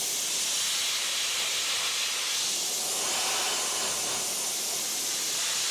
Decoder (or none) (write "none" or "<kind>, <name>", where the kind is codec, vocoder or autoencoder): none